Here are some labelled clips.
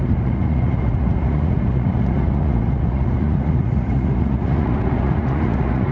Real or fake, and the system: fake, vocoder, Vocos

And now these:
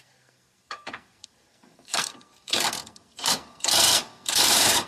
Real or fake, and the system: fake, codec, SNAC